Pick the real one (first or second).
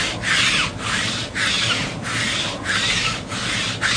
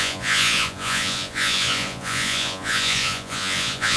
first